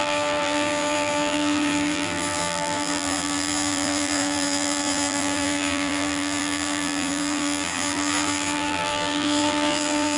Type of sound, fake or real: fake